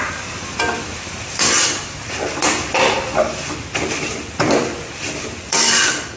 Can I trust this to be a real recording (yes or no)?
no